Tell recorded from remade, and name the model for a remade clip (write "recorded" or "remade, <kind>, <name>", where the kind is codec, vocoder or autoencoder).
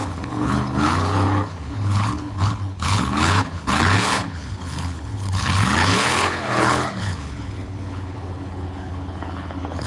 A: remade, codec, HILCodec